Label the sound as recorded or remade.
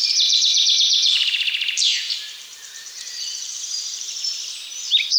remade